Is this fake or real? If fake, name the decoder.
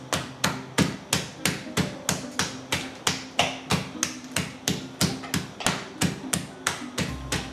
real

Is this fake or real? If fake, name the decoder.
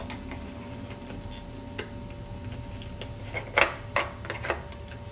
real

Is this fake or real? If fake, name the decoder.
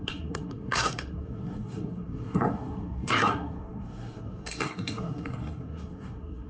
fake, codec, SNAC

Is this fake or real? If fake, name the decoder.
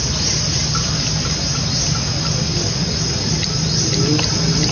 real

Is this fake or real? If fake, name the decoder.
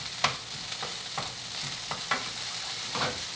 real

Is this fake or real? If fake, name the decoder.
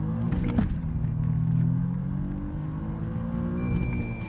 real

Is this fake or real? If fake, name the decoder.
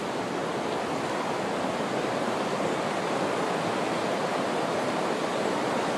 real